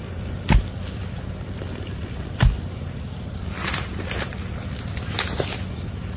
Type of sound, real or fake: real